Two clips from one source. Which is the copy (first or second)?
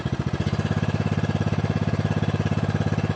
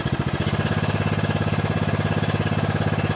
first